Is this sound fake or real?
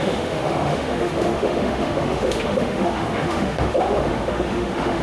fake